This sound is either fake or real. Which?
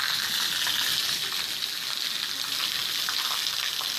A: real